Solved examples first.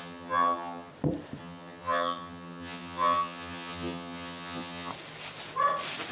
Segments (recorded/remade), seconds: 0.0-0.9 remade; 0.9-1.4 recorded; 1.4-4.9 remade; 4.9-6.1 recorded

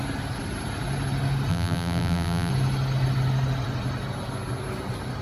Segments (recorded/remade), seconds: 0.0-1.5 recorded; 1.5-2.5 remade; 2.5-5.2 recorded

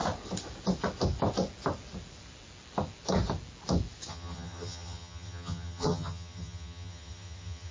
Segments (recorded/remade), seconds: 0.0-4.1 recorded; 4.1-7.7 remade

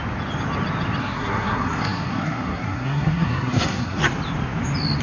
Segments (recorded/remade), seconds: 0.0-1.0 recorded; 1.0-4.0 remade; 4.0-5.0 recorded

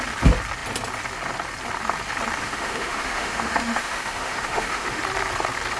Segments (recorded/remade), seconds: 0.0-2.4 recorded; 2.4-5.0 remade; 5.0-5.8 recorded

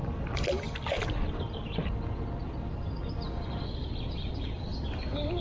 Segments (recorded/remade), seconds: 0.0-1.8 remade; 1.8-3.8 recorded; 3.8-4.7 remade; 4.7-5.4 recorded

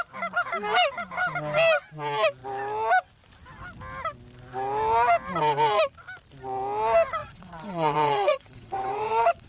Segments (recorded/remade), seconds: 0.0-7.2 recorded; 7.2-9.5 remade